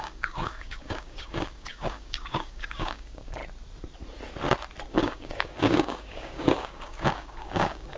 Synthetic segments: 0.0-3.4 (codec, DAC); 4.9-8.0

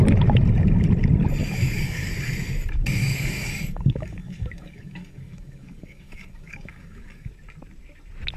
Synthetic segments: 1.4-2.1 (codec, DAC); 3.0-7.3

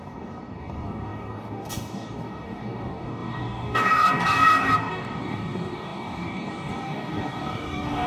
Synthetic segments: 0.0-8.1 (codec, DAC)

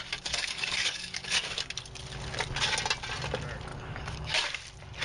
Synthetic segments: 0.0-1.7 (codec, DAC); 3.7-4.4

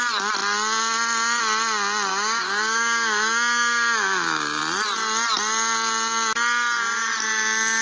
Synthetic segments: 2.1-4.6 (codec, DAC)

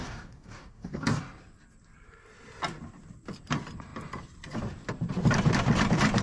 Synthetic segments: 0.0-1.2 (codec, DAC)

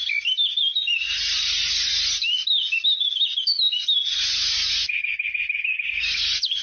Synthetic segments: none

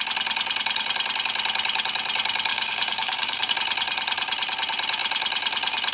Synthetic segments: 2.5-3.5 (codec, DAC)